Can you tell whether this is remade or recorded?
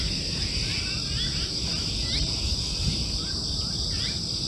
recorded